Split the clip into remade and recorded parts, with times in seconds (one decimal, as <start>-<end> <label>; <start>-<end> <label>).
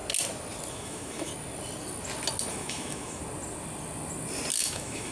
0.0-0.7 recorded; 0.7-1.3 remade; 1.3-2.5 recorded; 2.5-3.2 remade; 3.2-4.6 recorded; 4.6-5.1 remade